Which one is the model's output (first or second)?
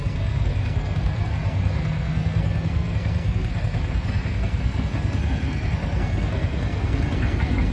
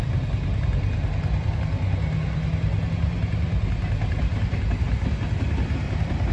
first